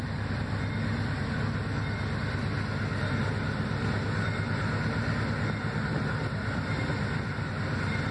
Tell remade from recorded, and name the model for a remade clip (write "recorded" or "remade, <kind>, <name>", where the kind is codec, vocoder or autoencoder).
recorded